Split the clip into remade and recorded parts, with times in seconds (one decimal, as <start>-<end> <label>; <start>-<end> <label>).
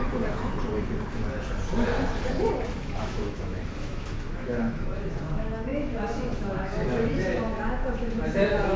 0.0-0.5 remade; 0.5-2.8 recorded; 2.8-8.8 remade